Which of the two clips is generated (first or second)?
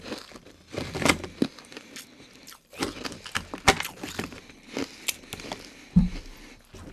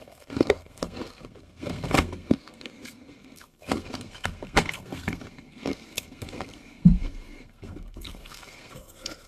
second